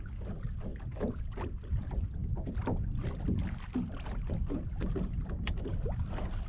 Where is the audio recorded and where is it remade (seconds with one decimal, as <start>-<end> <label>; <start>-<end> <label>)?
0.0-6.5 recorded